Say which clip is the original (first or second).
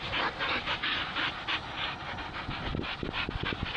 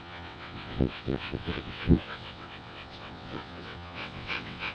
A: first